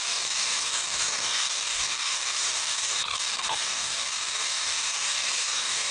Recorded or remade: remade